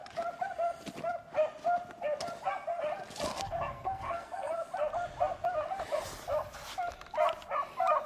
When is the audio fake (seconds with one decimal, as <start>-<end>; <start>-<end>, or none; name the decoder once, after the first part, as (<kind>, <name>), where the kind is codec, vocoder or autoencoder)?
3.3-4.5 (codec, SNAC)